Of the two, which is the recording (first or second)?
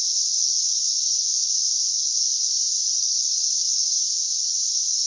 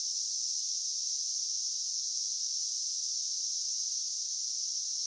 second